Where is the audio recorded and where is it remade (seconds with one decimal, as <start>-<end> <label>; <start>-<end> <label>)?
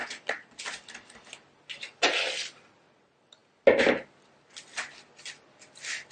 0.0-0.6 remade; 0.6-6.1 recorded